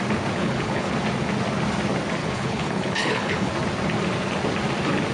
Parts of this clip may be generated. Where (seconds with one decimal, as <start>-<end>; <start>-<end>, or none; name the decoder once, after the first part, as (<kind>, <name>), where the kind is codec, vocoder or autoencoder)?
0.4-0.9 (codec, HILCodec); 2.2-3.5